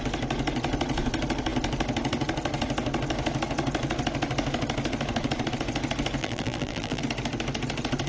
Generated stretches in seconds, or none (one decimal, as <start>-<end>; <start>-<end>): 6.2-7.0